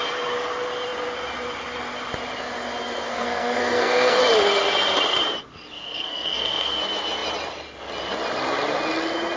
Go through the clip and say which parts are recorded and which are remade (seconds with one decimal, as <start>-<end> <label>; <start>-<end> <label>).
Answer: 0.0-3.1 recorded; 3.1-4.2 remade; 4.2-5.8 recorded; 5.8-6.8 remade; 6.8-9.4 recorded